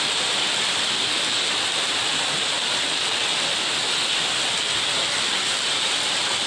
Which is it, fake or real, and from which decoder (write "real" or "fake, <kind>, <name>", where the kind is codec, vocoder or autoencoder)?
real